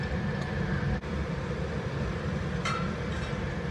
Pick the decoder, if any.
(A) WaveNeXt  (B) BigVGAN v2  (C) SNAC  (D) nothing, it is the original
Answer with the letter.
B